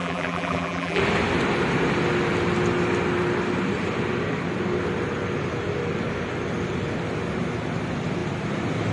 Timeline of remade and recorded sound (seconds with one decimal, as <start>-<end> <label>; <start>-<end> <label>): 0.0-1.0 remade; 1.0-8.9 recorded